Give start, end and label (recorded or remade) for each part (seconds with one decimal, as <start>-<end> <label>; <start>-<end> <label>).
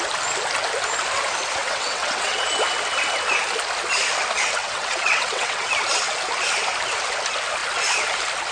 0.0-1.6 recorded; 1.6-2.4 remade; 2.4-4.6 recorded; 4.6-5.7 remade; 5.7-8.5 recorded